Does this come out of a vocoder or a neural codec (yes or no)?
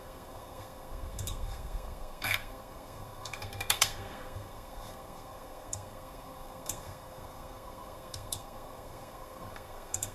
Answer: yes